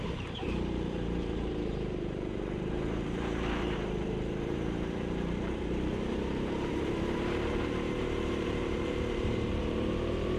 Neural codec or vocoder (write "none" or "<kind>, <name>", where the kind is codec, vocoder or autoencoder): vocoder, BigVGAN v2